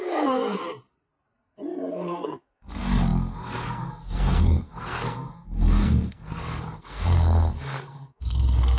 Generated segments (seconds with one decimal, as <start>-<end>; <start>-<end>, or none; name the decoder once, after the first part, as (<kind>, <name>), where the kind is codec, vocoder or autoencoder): 0.0-0.6 (codec, SNAC); 1.9-8.8